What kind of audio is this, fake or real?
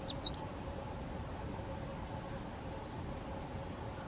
real